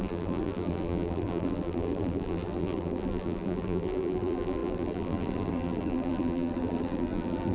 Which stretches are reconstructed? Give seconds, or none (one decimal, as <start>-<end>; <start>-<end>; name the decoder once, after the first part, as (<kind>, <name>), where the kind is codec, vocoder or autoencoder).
0.0-7.5 (vocoder, BigVGAN v2)